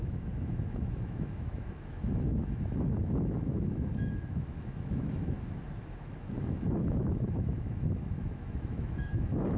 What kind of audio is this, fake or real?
fake